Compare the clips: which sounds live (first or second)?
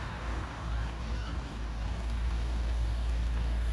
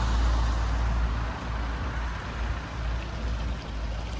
second